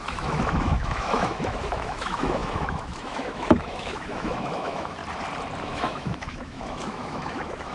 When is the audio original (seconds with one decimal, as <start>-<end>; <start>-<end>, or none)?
5.0-5.6